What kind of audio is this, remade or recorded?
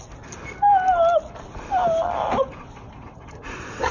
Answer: recorded